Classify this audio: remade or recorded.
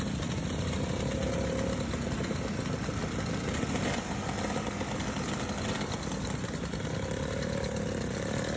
recorded